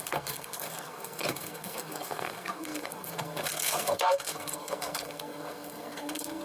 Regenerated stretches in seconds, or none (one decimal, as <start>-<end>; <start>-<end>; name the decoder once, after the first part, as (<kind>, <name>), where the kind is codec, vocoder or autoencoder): 0.0-6.4 (codec, SNAC)